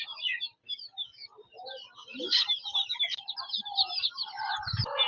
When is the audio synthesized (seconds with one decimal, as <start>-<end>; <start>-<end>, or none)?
none